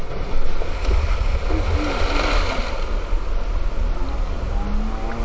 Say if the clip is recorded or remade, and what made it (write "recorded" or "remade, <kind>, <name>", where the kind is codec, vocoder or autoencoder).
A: recorded